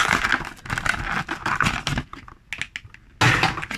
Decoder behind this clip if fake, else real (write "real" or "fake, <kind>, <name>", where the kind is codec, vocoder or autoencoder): real